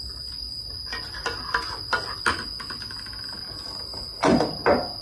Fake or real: real